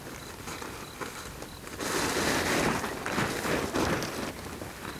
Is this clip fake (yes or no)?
no